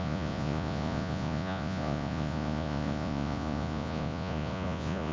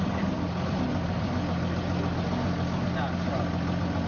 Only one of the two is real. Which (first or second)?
second